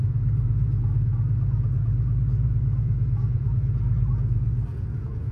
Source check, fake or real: fake